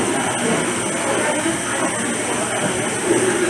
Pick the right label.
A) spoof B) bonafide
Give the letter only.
B